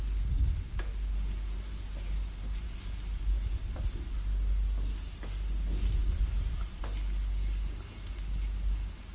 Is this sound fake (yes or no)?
no